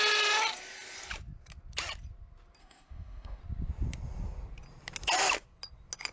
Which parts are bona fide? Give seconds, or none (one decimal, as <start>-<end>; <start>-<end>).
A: 0.0-2.6; 3.4-6.1